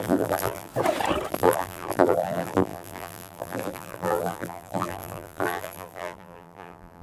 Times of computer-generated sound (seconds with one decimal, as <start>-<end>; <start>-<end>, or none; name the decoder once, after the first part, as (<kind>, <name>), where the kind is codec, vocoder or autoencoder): 0.0-0.7 (vocoder, BigVGAN v2); 1.3-7.0